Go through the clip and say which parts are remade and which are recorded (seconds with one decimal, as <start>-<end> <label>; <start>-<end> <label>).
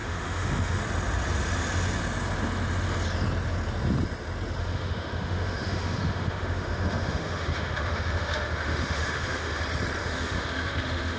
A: 0.0-0.8 remade; 0.8-4.6 recorded; 4.6-9.6 remade; 9.6-10.0 recorded; 10.0-11.2 remade